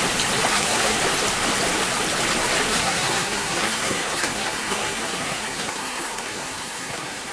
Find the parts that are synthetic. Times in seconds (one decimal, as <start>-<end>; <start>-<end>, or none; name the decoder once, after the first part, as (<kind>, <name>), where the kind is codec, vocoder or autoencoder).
0.5-1.0 (codec, SNAC); 2.7-7.3